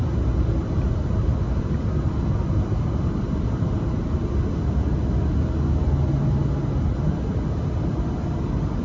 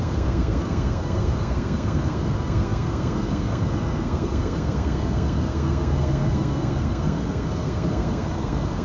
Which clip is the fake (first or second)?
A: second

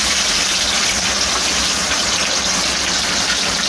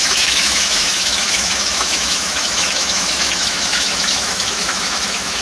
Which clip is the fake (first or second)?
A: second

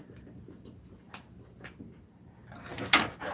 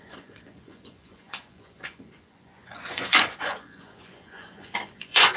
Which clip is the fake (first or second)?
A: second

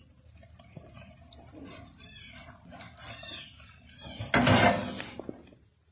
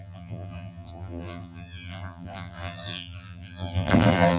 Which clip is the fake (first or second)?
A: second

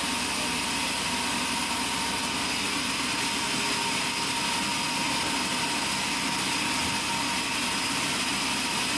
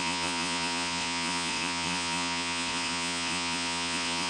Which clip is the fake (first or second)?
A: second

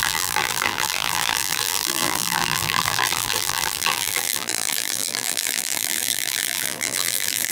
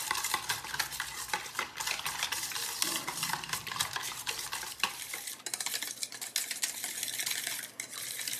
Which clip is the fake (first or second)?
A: first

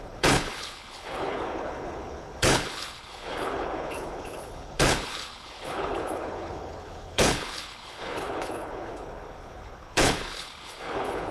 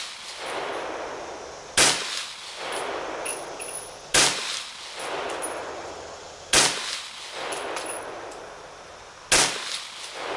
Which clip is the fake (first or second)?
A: first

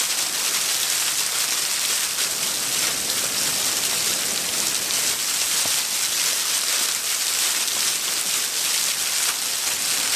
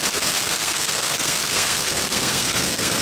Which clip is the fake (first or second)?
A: second